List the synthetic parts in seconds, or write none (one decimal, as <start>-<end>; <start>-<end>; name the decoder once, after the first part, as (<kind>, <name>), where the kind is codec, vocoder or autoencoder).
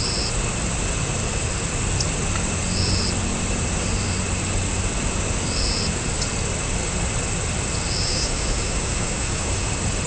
8.1-9.7 (autoencoder, DAC-VAE)